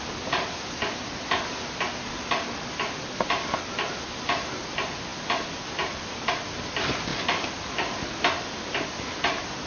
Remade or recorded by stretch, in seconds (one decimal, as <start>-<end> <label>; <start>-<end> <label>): 0.0-9.7 recorded